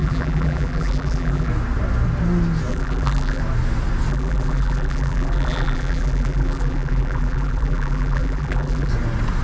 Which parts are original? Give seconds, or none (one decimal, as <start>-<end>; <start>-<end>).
1.5-2.7; 3.4-4.1; 8.9-9.4